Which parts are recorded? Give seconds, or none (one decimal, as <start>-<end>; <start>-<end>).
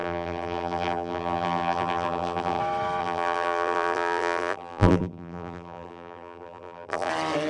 2.6-3.0; 7.1-7.5